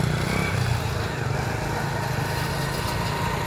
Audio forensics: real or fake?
real